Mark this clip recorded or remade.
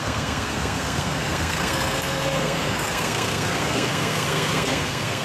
remade